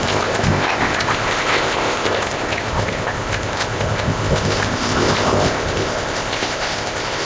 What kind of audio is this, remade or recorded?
remade